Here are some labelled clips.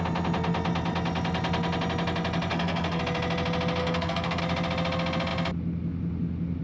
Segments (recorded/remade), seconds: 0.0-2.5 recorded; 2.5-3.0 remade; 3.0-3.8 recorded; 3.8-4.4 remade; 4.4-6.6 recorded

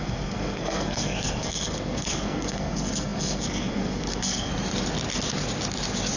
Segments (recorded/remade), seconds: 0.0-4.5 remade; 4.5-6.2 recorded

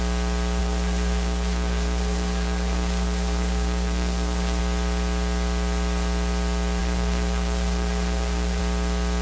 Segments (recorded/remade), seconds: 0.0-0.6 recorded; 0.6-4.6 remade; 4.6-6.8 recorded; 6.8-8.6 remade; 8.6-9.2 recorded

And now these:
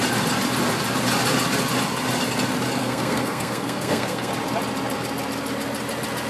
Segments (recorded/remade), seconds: 0.0-2.8 recorded; 2.8-4.3 remade; 4.3-6.3 recorded